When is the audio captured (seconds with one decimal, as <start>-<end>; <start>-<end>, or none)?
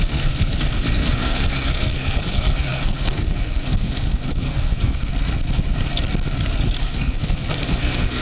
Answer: 5.1-6.8